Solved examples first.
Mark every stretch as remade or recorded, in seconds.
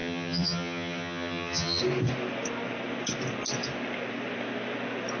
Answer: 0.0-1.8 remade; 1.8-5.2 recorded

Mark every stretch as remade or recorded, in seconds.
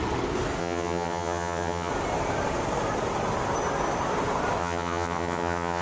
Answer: 0.0-0.6 recorded; 0.6-1.9 remade; 1.9-4.6 recorded; 4.6-5.8 remade